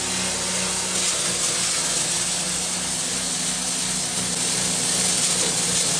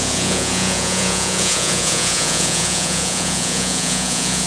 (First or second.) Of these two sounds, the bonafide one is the first